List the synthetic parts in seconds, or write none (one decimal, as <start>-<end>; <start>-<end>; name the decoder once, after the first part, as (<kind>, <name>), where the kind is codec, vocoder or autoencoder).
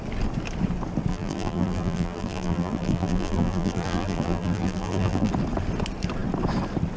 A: 1.1-5.3 (vocoder, BigVGAN v2)